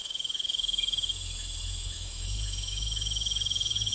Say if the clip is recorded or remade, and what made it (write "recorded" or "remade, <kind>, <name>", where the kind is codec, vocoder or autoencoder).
remade, autoencoder, DAC-VAE